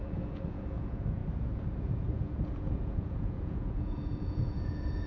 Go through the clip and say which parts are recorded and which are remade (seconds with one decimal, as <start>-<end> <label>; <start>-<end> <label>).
0.0-5.1 remade